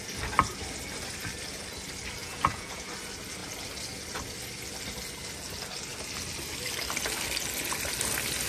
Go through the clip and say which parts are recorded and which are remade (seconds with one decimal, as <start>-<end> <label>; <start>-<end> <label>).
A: 0.0-2.2 recorded; 2.2-2.9 remade; 2.9-8.5 recorded

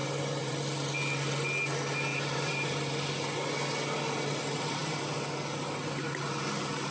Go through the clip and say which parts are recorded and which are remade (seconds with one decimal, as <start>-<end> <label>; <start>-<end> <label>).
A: 0.0-0.6 remade; 0.6-2.1 recorded; 2.1-3.1 remade; 3.1-6.9 recorded

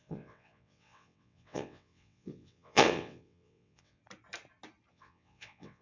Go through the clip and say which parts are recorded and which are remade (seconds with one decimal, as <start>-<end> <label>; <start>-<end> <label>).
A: 0.0-4.0 remade; 4.0-4.9 recorded; 4.9-5.8 remade